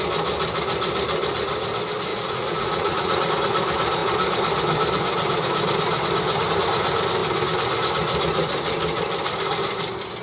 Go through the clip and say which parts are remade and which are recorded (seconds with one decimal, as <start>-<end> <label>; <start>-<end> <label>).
0.0-2.1 recorded; 2.1-3.3 remade; 3.3-10.2 recorded